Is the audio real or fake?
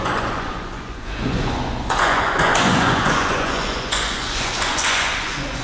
fake